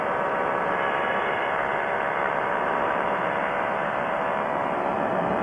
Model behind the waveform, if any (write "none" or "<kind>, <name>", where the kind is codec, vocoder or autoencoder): vocoder, BigVGAN v2